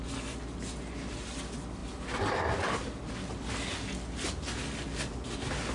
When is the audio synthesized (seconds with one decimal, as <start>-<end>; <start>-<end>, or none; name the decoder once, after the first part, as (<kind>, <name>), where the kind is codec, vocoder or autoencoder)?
none

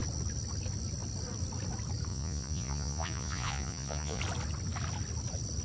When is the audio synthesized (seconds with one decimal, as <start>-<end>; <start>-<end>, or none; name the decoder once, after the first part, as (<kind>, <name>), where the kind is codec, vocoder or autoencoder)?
2.1-4.2 (vocoder, Vocos)

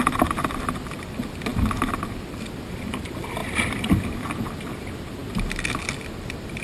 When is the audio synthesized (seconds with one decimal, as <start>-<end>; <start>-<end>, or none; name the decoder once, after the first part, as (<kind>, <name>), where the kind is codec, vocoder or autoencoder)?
3.4-4.2 (vocoder, BigVGAN v2)

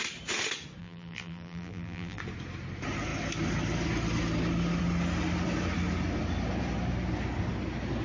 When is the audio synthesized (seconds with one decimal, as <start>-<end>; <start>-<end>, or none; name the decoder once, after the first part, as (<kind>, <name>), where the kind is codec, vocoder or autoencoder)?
0.8-2.2 (vocoder, BigVGAN v2)

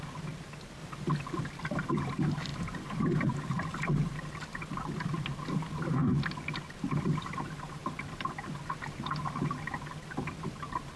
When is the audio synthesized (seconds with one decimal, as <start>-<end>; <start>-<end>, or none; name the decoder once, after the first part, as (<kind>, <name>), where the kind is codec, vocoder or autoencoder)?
0.0-0.8 (vocoder, BigVGAN v2); 1.4-6.0; 7.0-7.8; 10.5-11.0

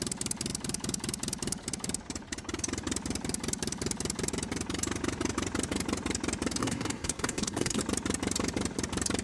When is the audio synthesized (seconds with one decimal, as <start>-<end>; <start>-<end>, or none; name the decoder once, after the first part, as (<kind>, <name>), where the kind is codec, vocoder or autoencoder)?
6.6-7.8 (codec, SNAC)

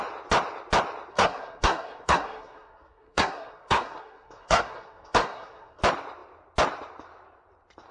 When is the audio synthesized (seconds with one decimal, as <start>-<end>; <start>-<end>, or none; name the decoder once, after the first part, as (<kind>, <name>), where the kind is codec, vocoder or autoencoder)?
1.1-5.8 (codec, SNAC)

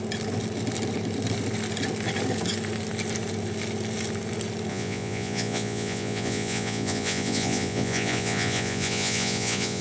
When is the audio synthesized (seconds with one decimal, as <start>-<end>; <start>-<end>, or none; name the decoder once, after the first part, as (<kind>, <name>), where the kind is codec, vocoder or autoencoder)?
4.7-9.8 (vocoder, Vocos)